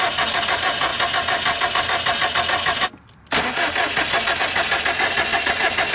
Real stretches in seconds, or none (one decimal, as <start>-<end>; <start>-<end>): 0.0-5.9